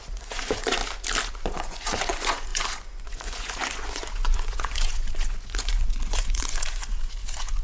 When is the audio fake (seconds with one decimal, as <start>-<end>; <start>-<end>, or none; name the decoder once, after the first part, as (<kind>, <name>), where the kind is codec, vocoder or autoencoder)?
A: 0.0-0.8 (vocoder, Vocos); 1.3-7.6